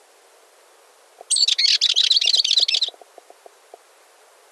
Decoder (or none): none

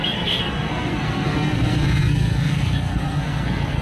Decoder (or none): codec, SNAC